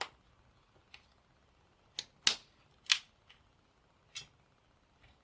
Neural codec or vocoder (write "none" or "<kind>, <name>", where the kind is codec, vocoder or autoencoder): none